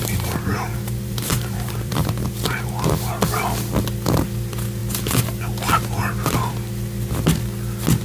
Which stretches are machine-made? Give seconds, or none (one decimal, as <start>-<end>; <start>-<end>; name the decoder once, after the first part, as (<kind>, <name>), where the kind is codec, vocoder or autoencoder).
0.5-3.1 (vocoder, BigVGAN v2)